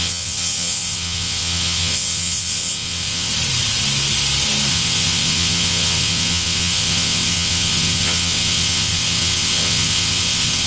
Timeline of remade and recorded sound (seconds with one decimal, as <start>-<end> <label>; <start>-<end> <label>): 0.0-3.3 remade; 3.3-4.7 recorded; 4.7-10.7 remade